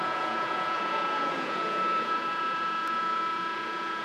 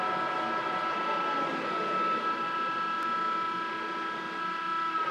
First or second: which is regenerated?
first